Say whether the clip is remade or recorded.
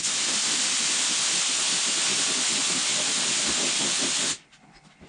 recorded